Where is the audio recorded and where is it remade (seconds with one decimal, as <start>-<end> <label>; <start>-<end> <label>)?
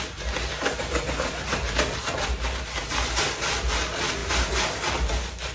0.0-5.5 recorded